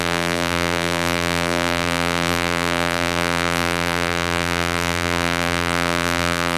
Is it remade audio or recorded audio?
remade